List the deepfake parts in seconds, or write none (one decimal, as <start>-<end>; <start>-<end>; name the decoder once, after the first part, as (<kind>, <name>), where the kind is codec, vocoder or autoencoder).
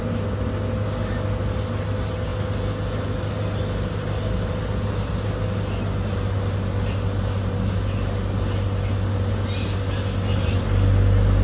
none